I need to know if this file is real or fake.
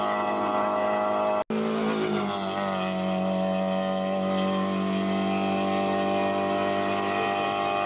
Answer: real